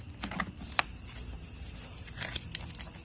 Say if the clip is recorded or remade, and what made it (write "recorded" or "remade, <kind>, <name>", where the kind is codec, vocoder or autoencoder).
recorded